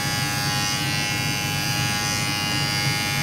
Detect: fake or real real